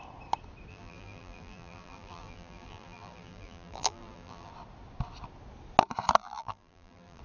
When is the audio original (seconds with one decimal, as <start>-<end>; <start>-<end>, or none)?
0.0-0.7; 4.5-6.2